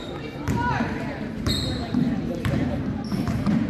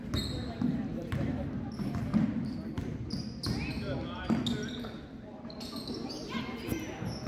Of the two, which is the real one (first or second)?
second